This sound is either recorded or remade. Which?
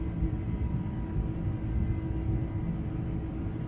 recorded